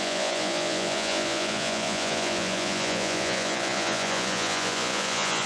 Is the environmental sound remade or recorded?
remade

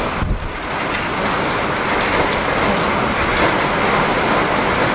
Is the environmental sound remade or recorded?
recorded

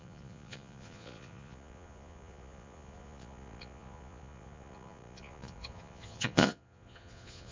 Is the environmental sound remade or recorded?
remade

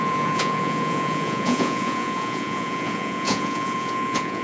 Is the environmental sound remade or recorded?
remade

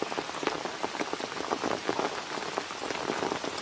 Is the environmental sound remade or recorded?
recorded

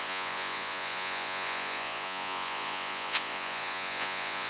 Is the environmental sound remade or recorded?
remade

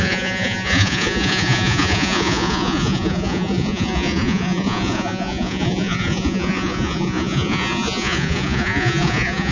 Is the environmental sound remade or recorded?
remade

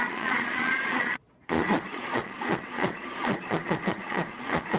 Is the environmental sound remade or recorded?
remade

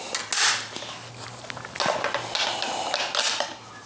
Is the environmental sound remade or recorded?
recorded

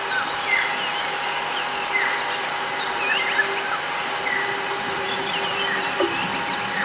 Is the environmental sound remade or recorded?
recorded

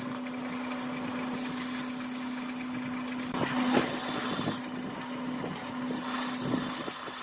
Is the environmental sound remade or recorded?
recorded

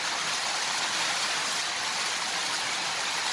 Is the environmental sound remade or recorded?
recorded